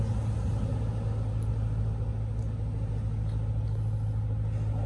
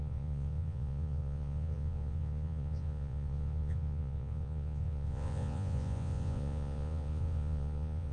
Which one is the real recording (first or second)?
first